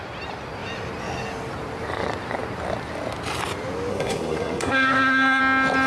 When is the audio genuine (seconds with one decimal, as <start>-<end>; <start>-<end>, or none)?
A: 0.0-3.9; 5.4-5.9